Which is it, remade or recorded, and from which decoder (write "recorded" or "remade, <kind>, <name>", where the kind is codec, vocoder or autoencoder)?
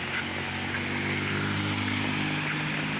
recorded